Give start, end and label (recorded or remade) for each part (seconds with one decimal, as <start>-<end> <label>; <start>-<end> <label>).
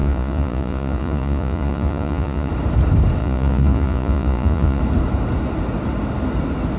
0.0-2.5 remade; 2.5-3.2 recorded; 3.2-4.8 remade; 4.8-6.8 recorded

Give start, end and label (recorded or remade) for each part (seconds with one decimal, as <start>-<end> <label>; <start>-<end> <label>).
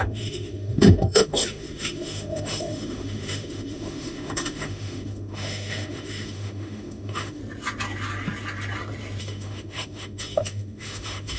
0.0-7.4 remade; 7.4-9.2 recorded; 9.2-11.4 remade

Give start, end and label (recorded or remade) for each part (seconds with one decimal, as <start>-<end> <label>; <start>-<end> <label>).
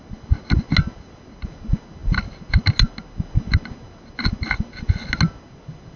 0.0-6.0 recorded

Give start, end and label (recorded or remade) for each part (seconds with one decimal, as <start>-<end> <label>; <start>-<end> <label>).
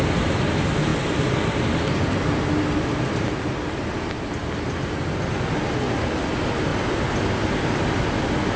0.0-8.6 recorded